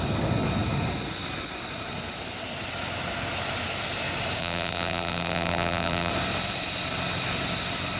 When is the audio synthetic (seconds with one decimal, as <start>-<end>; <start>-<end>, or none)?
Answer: 4.4-6.1